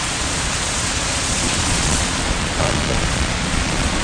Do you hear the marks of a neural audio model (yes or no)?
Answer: yes